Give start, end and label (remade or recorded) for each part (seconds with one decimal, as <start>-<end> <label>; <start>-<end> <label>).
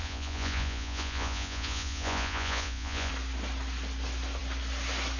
0.0-3.1 remade; 3.1-5.2 recorded